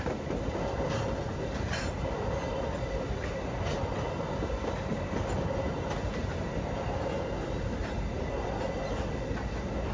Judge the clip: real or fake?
real